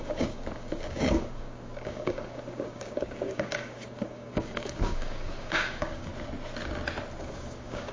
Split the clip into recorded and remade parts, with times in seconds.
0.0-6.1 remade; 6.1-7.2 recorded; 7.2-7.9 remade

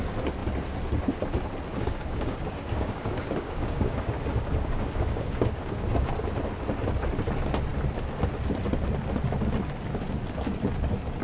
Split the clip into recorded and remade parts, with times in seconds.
0.0-1.7 recorded; 1.7-6.1 remade; 6.1-11.2 recorded